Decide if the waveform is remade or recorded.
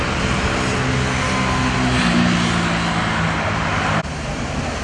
recorded